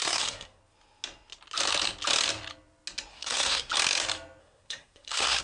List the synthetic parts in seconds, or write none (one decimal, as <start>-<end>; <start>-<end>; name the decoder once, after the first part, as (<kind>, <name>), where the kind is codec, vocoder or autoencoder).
0.0-0.6 (codec, SNAC); 3.1-3.7; 4.4-5.4